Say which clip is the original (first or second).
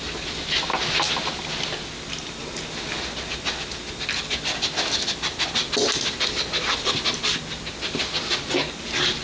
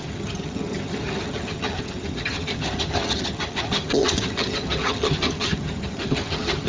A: first